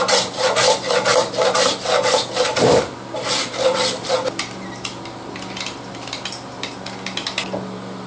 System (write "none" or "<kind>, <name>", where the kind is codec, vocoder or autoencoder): none